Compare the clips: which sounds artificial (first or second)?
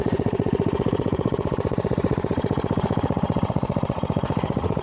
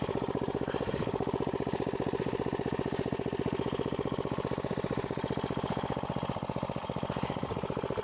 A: first